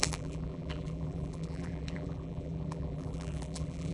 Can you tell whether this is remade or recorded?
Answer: remade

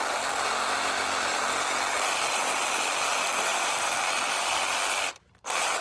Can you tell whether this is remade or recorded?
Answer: recorded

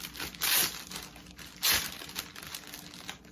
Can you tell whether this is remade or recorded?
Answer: recorded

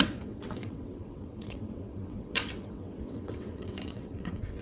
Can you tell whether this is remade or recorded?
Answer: remade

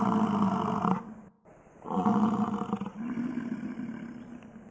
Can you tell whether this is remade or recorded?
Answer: recorded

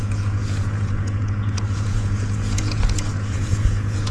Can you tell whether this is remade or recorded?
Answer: remade